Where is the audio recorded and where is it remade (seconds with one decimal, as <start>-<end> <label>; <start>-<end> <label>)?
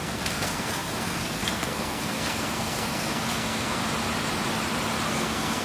0.0-3.8 remade; 3.8-5.1 recorded; 5.1-5.6 remade